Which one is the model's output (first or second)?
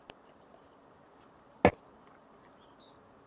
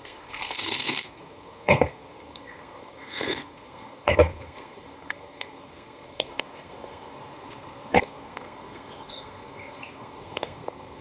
second